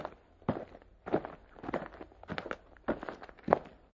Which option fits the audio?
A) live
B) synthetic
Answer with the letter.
A